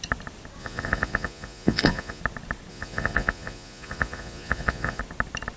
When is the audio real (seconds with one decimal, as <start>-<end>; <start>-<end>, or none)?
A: 0.0-0.6; 2.2-2.7; 5.0-5.6